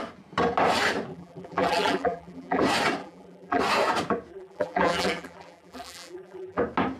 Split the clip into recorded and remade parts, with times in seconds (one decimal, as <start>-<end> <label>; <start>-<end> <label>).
0.0-1.1 recorded; 1.1-2.6 remade; 2.6-3.0 recorded; 3.0-3.6 remade; 3.6-4.3 recorded; 4.3-6.6 remade; 6.6-7.0 recorded